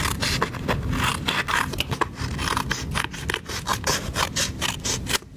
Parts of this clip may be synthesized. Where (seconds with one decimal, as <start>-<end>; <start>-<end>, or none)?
none